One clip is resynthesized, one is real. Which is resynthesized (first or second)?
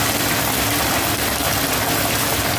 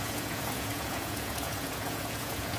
second